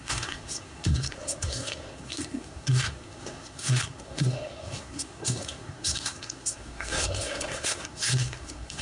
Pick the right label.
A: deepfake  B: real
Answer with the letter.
A